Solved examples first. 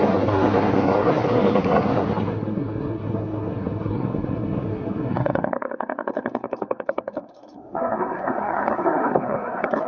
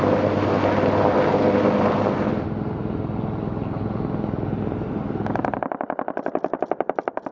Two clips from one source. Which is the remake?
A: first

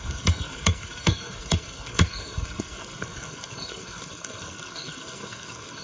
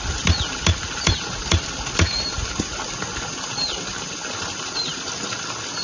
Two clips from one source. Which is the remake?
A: first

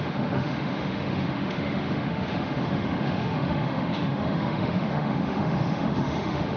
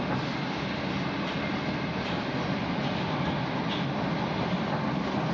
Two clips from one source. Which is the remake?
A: first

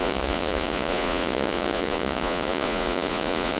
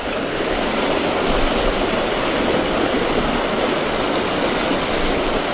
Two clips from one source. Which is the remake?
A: first